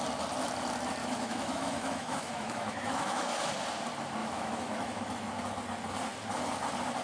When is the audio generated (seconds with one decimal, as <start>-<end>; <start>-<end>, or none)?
1.0-3.5; 4.2-5.3